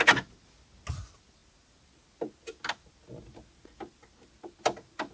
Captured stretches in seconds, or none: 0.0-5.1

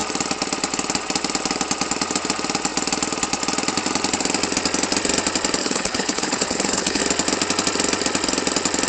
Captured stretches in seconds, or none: 0.0-5.6; 7.0-8.9

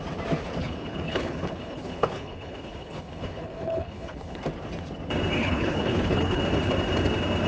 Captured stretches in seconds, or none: 0.0-0.6; 4.4-5.4; 6.4-7.5

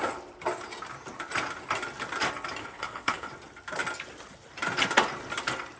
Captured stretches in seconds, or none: 0.0-2.6; 3.3-5.8